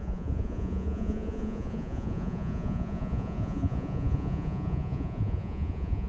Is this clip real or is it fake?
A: fake